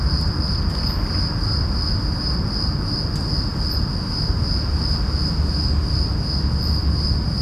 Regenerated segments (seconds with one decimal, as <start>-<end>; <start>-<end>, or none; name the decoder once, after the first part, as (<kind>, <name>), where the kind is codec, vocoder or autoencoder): none